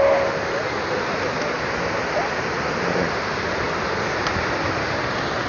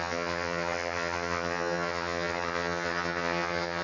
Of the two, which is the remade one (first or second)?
second